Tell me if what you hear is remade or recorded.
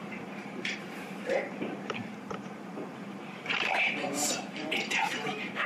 remade